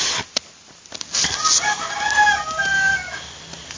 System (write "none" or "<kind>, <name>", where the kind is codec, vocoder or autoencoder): none